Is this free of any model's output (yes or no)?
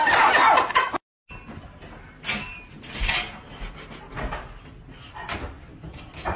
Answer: yes